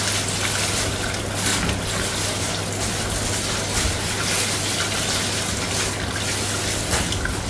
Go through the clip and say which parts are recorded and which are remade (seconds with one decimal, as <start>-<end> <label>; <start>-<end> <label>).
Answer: 0.0-7.5 recorded